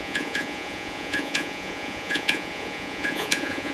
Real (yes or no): no